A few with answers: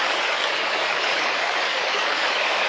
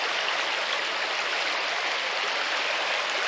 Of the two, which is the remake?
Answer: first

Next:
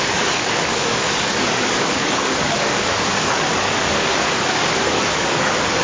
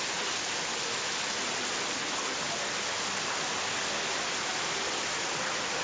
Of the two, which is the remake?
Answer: first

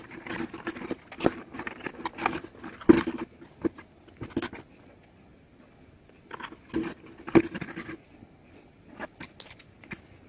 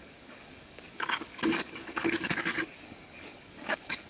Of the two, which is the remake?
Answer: second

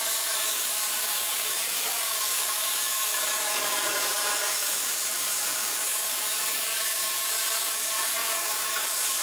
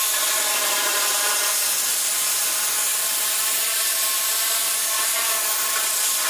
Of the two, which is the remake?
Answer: first